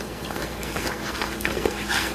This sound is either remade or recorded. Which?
remade